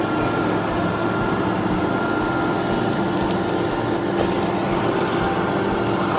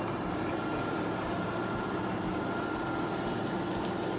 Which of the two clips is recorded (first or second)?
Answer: first